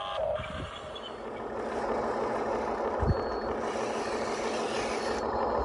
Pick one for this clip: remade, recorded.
recorded